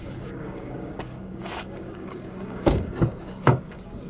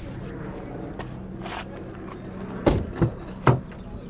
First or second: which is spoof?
first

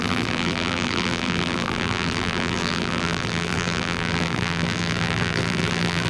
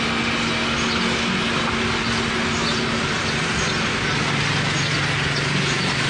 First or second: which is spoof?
first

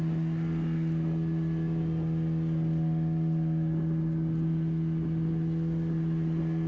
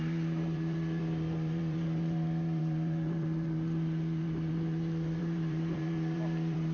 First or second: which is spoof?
second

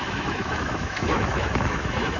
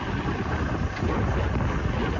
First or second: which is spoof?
first